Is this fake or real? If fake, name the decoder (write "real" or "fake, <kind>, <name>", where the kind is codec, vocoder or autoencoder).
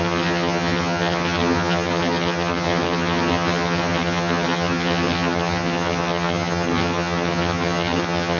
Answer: fake, vocoder, HiFi-GAN